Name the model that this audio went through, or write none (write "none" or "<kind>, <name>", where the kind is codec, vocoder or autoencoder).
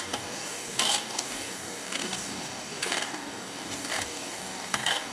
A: codec, DAC